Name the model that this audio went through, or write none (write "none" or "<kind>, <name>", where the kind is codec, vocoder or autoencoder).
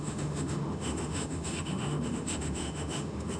autoencoder, DAC-VAE